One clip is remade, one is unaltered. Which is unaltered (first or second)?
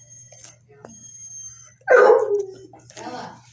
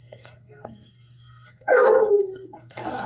first